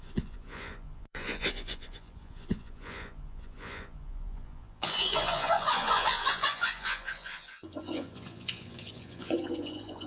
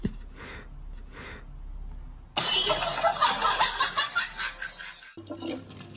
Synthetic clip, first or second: first